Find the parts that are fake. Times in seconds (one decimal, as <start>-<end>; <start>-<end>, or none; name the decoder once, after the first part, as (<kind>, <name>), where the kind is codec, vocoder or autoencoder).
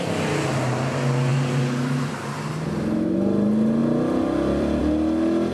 1.3-2.1 (vocoder, BigVGAN v2); 3.8-4.8